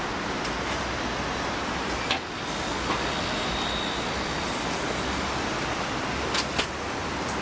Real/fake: real